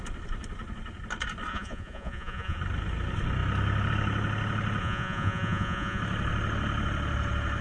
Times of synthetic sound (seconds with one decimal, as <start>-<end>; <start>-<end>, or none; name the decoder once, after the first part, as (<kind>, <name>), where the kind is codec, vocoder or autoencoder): 1.5-2.6 (vocoder, Vocos); 4.8-6.0